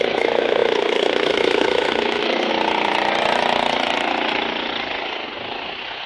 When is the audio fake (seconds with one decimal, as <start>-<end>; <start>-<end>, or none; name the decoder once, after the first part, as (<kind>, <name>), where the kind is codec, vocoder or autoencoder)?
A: 0.0-2.5 (codec, SNAC)